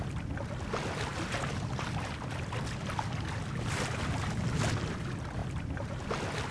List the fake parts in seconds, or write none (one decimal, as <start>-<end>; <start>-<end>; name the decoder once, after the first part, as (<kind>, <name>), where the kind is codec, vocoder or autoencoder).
5.4-6.1 (vocoder, BigVGAN v2)